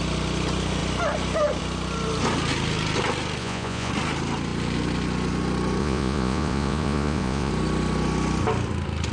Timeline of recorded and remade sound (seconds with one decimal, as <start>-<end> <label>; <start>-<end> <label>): 0.0-3.4 recorded; 3.4-3.9 remade; 3.9-5.8 recorded; 5.8-7.5 remade; 7.5-9.1 recorded